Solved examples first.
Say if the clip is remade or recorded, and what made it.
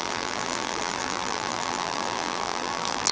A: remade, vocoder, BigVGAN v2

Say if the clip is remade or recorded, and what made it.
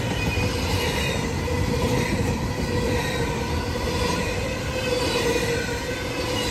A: recorded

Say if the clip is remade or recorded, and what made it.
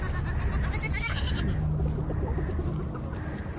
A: recorded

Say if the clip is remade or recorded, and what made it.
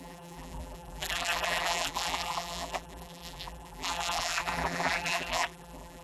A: remade, vocoder, BigVGAN v2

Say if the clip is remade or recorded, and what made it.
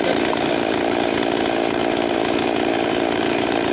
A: remade, vocoder, BigVGAN v2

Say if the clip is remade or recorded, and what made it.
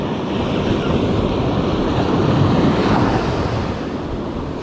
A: recorded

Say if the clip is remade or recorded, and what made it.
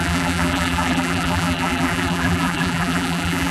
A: remade, vocoder, BigVGAN v2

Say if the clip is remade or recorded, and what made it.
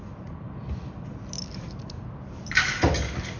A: recorded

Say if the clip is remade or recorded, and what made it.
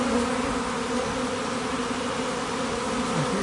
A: recorded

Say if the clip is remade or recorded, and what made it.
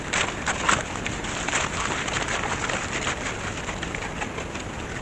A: recorded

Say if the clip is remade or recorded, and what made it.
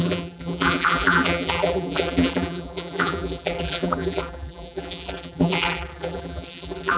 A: remade, vocoder, BigVGAN v2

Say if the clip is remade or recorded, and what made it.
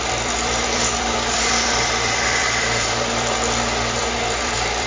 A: remade, vocoder, BigVGAN v2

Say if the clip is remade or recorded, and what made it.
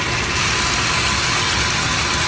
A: recorded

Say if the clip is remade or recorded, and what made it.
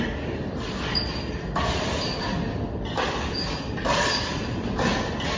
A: remade, vocoder, BigVGAN v2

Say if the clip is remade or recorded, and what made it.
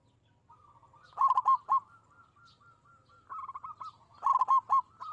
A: recorded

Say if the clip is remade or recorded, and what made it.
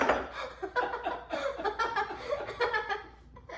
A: recorded